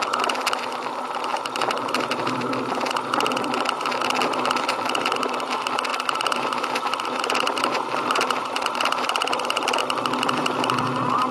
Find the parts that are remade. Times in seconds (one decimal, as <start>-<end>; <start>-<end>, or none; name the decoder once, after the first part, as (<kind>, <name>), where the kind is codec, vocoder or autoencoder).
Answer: 1.3-2.6 (vocoder, BigVGAN v2); 5.9-9.8